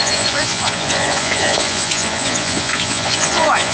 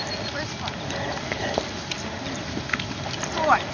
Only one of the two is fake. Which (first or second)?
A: first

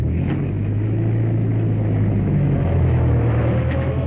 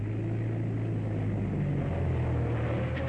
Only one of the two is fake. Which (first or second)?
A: first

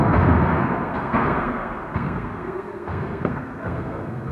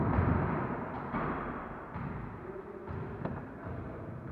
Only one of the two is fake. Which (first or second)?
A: first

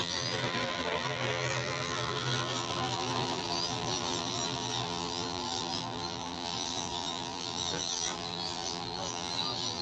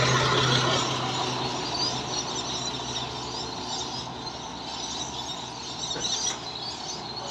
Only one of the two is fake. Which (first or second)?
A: first